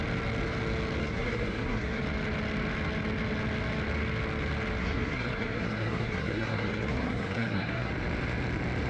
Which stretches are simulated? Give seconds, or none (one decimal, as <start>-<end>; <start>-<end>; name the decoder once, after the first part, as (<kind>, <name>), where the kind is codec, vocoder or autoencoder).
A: 1.0-2.0 (codec, SNAC); 4.8-7.9